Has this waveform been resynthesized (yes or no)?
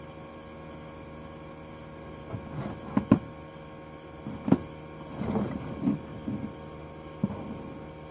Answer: no